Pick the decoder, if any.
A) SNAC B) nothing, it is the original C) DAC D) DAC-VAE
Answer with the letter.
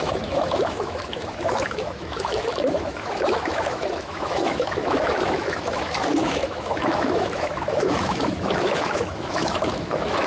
D